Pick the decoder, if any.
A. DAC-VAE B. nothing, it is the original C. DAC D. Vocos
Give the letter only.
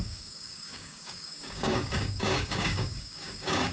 C